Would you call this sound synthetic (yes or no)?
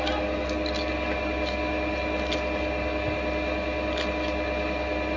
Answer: no